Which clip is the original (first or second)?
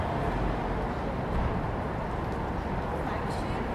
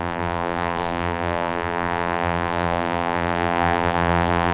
first